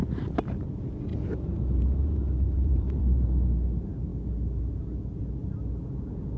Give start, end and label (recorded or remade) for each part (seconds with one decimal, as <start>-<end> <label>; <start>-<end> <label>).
0.0-1.1 recorded; 1.1-3.0 remade; 3.0-6.4 recorded